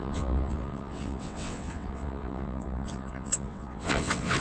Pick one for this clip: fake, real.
fake